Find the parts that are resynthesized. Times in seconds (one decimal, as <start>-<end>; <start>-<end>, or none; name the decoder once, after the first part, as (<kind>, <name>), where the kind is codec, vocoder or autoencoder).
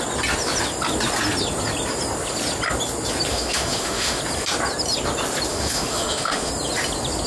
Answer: 3.3-4.2 (autoencoder, DAC-VAE); 5.5-6.5